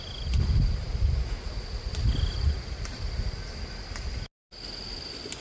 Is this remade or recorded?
recorded